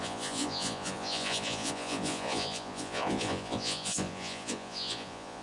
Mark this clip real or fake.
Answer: fake